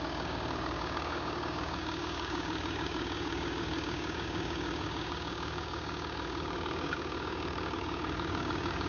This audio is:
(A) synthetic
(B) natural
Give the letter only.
A